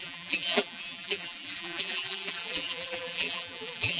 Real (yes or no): no